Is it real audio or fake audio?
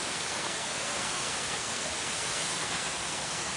fake